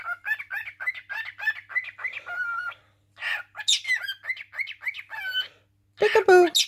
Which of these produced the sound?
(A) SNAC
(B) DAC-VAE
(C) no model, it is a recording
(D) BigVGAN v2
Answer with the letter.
C